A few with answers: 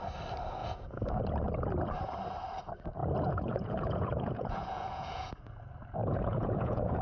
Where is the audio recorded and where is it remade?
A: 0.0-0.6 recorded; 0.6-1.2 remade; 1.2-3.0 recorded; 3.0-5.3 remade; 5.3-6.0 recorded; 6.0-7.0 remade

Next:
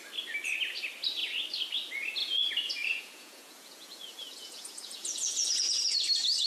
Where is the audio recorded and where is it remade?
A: 0.0-2.2 recorded; 2.2-5.8 remade; 5.8-6.5 recorded